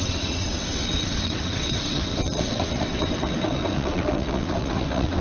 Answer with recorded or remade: remade